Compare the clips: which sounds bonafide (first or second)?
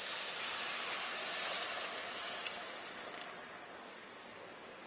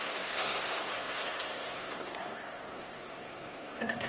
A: first